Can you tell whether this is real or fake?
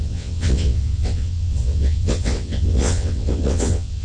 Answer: fake